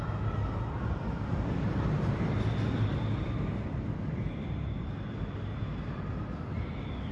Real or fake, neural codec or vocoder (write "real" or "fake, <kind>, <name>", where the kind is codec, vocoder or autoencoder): real